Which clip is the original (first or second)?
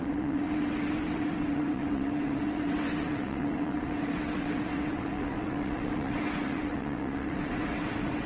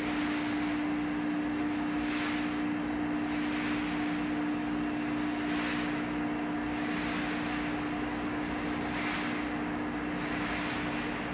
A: second